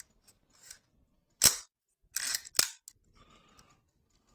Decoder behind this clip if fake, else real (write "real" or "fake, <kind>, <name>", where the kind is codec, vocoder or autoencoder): real